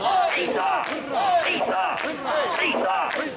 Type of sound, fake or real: real